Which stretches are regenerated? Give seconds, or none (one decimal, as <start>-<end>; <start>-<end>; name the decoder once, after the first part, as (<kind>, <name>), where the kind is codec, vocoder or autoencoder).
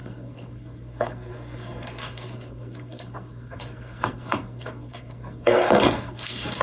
0.0-6.6 (codec, SNAC)